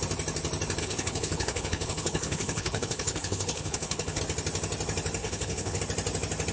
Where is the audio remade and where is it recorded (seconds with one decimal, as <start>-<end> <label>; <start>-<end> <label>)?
0.0-0.8 recorded; 0.8-4.2 remade; 4.2-5.2 recorded; 5.2-5.8 remade; 5.8-6.5 recorded